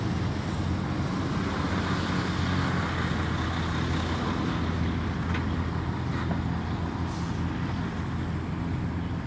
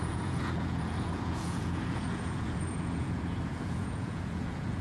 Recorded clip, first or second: first